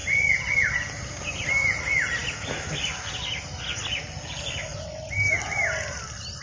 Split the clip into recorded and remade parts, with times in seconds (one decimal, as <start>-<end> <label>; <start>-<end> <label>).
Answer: 0.0-1.4 remade; 1.4-6.4 recorded